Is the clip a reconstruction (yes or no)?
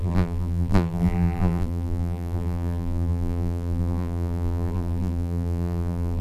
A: yes